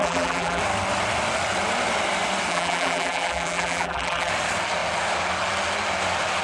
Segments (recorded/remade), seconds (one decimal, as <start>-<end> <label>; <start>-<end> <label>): 0.0-0.6 remade; 0.6-2.5 recorded; 2.5-4.3 remade; 4.3-6.4 recorded

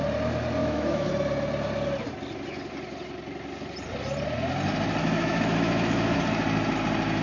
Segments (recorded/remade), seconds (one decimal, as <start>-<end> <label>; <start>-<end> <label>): 0.0-0.6 recorded; 0.6-1.1 remade; 1.1-5.0 recorded; 5.0-6.2 remade; 6.2-7.2 recorded

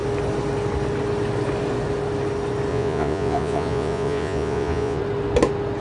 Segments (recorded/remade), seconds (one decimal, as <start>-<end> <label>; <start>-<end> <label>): 0.0-2.7 recorded; 2.7-5.0 remade; 5.0-5.8 recorded

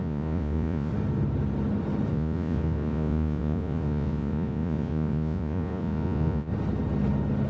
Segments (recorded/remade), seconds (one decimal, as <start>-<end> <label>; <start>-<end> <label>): 0.0-0.9 remade; 0.9-2.1 recorded; 2.1-6.5 remade; 6.5-7.5 recorded

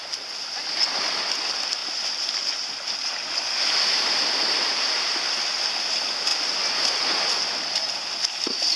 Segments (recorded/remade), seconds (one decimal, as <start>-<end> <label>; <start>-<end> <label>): 0.0-8.8 recorded

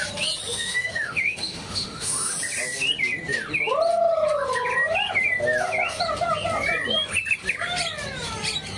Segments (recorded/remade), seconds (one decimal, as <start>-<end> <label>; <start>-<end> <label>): 0.0-0.5 recorded; 0.5-2.3 remade; 2.3-8.8 recorded

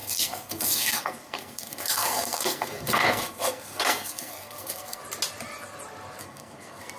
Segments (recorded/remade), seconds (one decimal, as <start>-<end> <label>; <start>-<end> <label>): 0.0-5.0 remade; 5.0-6.2 recorded; 6.2-7.0 remade